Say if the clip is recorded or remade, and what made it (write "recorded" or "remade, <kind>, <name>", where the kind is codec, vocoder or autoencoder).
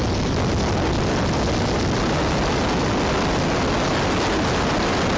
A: recorded